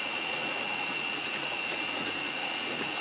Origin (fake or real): fake